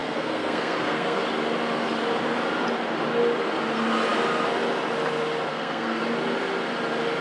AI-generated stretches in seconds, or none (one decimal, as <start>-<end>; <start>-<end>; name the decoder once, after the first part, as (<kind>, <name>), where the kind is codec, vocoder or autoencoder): 0.0-1.2 (codec, SNAC); 5.5-6.0